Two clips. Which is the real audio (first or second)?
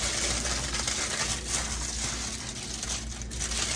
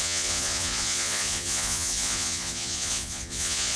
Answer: first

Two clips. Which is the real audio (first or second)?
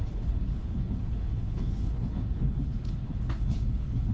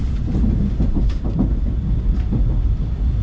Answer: second